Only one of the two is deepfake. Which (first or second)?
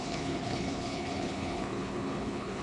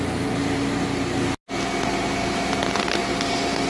first